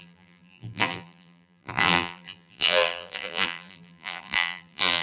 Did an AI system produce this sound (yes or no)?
yes